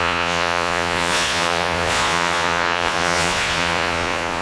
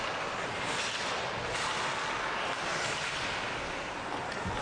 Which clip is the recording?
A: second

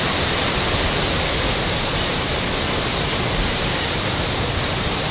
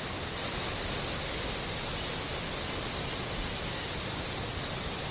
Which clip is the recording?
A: second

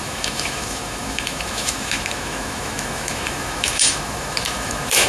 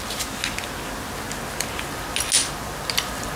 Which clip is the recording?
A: second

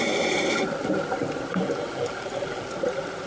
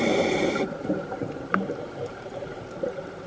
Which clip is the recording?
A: first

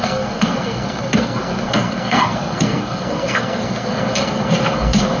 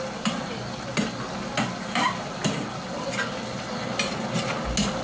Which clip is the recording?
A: second